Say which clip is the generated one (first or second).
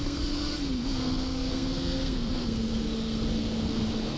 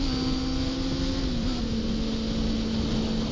first